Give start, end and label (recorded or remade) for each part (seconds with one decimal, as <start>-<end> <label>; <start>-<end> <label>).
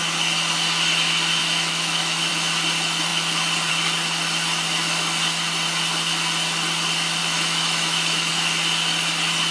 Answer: 0.0-1.4 recorded; 1.4-2.3 remade; 2.3-7.2 recorded; 7.2-8.3 remade; 8.3-9.5 recorded